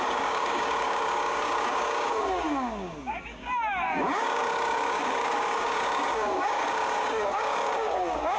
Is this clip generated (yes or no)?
yes